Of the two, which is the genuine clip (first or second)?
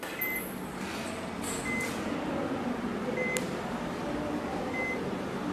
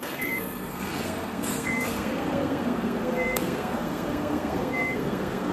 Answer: first